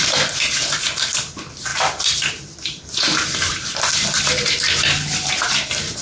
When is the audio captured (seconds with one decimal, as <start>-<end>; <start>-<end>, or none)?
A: 0.0-1.7; 5.3-6.0